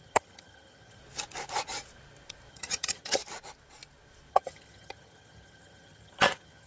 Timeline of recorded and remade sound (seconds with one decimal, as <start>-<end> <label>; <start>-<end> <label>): 0.0-1.0 remade; 1.0-2.5 recorded; 2.5-3.2 remade; 3.2-4.3 recorded; 4.3-6.7 remade